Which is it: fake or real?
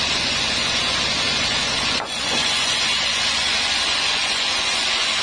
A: fake